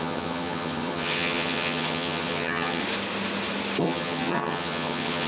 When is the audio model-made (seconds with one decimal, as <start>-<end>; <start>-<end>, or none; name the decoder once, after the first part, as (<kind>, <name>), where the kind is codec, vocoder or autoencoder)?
0.0-2.8 (vocoder, HiFi-GAN); 3.8-5.3